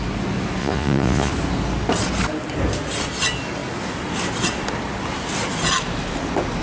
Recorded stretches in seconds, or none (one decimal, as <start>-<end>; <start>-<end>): 0.0-0.6; 1.3-6.6